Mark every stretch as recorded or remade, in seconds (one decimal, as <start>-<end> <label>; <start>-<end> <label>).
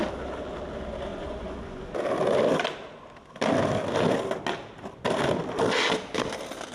0.0-1.1 recorded; 1.1-1.9 remade; 1.9-6.7 recorded